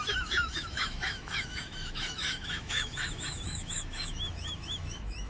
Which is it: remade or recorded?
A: remade